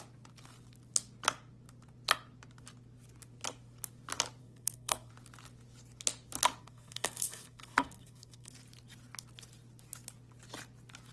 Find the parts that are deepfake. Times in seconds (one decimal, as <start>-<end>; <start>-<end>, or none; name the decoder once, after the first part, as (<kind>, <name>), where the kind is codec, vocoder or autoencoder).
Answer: 4.4-5.1 (codec, SNAC); 6.6-8.5